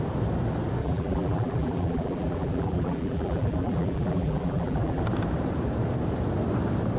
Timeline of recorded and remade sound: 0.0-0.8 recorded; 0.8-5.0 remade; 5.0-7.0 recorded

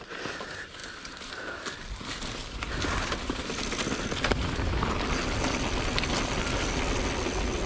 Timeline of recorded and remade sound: 0.0-7.7 recorded

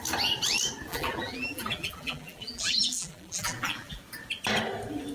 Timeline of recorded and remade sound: 0.0-0.9 recorded; 0.9-4.0 remade; 4.0-5.1 recorded

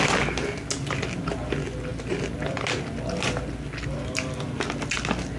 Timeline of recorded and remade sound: 0.0-5.4 recorded

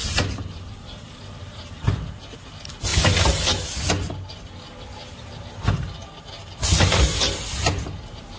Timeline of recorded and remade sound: 0.0-2.1 remade; 2.1-8.4 recorded

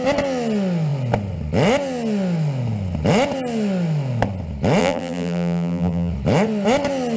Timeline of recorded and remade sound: 0.0-4.8 recorded; 4.8-6.1 remade; 6.1-7.2 recorded

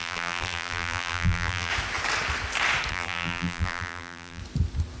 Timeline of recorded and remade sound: 0.0-1.7 remade; 1.7-2.9 recorded; 2.9-4.4 remade; 4.4-5.0 recorded

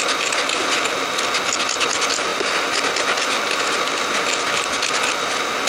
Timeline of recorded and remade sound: 0.0-5.7 recorded